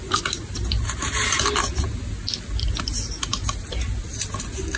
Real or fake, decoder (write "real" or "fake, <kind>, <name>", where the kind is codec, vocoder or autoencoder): real